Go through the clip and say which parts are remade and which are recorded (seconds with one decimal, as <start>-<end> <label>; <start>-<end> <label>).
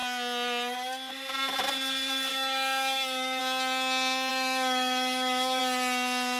0.0-2.3 recorded; 2.3-3.4 remade; 3.4-4.3 recorded; 4.3-5.6 remade; 5.6-6.4 recorded